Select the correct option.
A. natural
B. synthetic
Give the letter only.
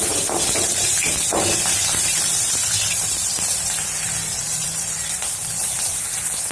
B